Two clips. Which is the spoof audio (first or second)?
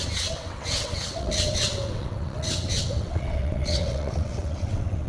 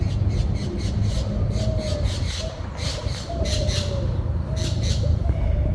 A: first